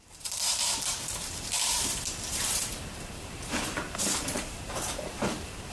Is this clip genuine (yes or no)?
no